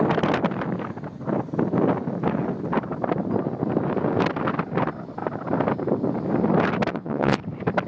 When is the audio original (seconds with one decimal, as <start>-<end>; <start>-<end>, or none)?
0.0-6.9; 7.4-7.9